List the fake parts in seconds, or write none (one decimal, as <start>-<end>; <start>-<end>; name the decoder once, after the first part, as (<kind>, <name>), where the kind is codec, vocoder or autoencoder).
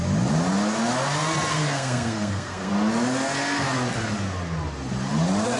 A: 1.5-2.7 (codec, SNAC)